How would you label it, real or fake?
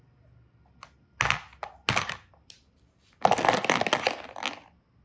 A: real